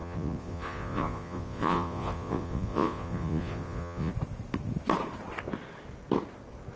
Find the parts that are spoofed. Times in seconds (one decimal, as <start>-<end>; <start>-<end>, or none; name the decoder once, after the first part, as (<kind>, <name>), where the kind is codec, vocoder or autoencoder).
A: 0.0-4.1 (vocoder, Vocos)